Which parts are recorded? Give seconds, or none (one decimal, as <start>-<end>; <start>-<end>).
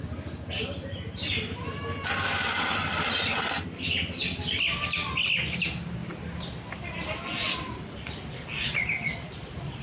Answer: 0.0-9.8